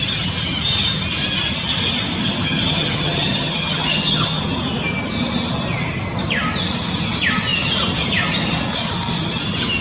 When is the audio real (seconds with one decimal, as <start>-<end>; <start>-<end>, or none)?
0.0-2.2; 4.4-9.8